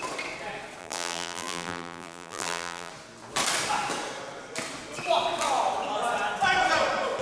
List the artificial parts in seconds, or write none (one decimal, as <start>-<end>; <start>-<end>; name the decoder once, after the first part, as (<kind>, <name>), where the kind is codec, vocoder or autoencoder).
0.8-2.9 (vocoder, BigVGAN v2)